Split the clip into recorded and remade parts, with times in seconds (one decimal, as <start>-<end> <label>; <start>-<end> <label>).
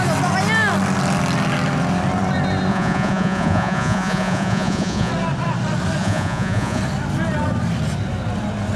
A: 0.0-2.7 recorded; 2.7-5.1 remade; 5.1-6.0 recorded; 6.0-6.8 remade; 6.8-8.8 recorded